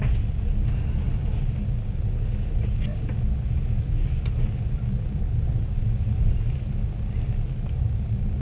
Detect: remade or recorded recorded